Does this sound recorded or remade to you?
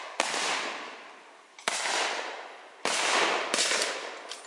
recorded